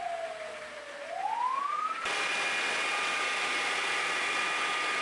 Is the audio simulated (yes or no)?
no